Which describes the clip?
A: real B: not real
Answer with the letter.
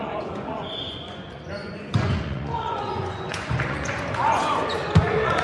B